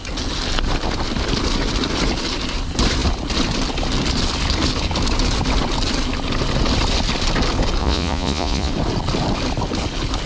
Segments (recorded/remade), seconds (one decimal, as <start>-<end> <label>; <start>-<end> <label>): 0.0-7.8 recorded; 7.8-8.7 remade; 8.7-10.3 recorded